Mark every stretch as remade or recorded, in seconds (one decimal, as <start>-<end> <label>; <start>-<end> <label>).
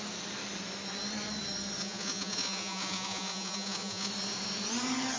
0.0-1.8 recorded; 1.8-4.1 remade; 4.1-5.2 recorded